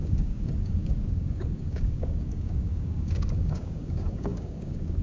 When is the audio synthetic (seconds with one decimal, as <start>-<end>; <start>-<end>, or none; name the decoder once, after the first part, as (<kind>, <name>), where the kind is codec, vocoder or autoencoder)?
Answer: 0.0-5.0 (codec, DAC)